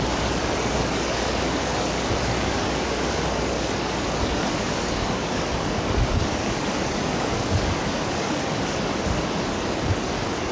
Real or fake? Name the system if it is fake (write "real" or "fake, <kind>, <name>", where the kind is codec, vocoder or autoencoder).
fake, codec, DAC